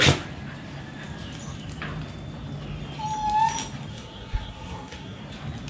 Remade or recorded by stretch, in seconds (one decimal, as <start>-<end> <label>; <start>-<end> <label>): 0.0-3.9 recorded; 3.9-5.2 remade; 5.2-5.7 recorded